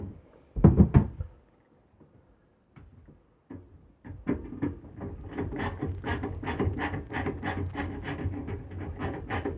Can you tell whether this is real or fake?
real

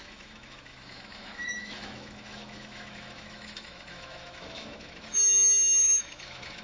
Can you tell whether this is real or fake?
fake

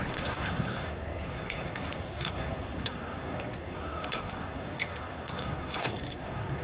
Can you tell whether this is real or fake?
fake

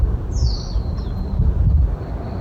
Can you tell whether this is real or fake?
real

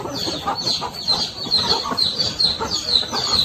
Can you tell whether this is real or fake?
real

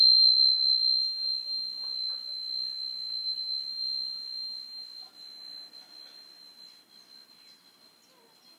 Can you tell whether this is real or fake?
real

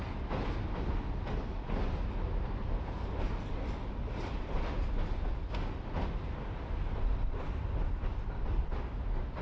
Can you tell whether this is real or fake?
real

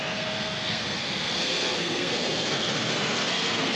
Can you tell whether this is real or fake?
fake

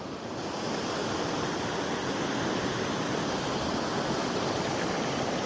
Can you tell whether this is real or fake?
real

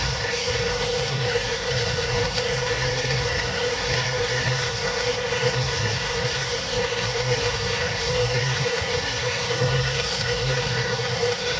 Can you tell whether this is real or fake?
fake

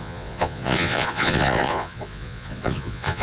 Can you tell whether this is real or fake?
fake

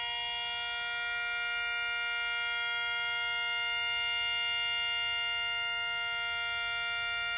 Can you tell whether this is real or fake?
real